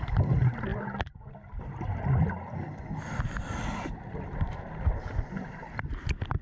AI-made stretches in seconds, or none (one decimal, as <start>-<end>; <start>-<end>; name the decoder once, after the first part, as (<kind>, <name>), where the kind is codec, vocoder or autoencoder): none